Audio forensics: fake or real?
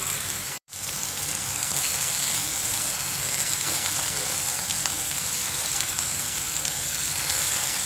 fake